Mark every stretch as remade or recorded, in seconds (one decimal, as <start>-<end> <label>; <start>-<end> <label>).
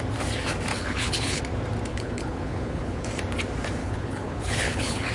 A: 0.0-0.7 recorded; 0.7-1.4 remade; 1.4-1.9 recorded; 1.9-3.1 remade; 3.1-3.8 recorded; 3.8-5.1 remade